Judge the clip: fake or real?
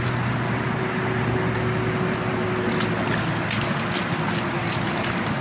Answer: real